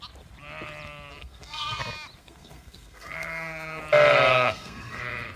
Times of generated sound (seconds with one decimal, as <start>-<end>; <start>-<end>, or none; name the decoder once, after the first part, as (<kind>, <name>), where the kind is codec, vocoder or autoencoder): 1.1-1.8 (codec, SNAC); 2.2-3.8; 4.3-5.0